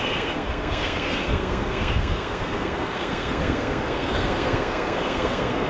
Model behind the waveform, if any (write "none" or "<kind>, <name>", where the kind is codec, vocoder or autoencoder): codec, SNAC